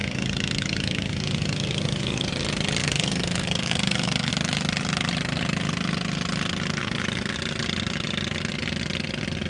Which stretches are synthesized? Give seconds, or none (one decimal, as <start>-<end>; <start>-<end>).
0.0-2.3; 2.8-4.3; 6.8-7.4

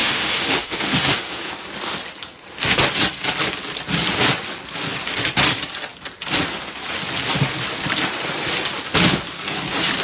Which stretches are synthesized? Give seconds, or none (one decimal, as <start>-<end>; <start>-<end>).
0.0-1.5

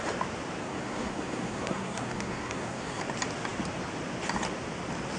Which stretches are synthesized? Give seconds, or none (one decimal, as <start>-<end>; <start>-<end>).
0.6-3.0

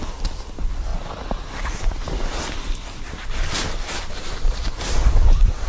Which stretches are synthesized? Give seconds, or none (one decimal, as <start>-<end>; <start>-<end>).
none